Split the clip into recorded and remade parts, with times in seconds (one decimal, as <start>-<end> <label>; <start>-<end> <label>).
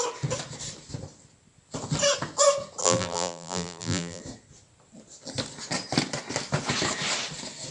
0.0-2.8 recorded; 2.8-4.2 remade; 4.2-7.7 recorded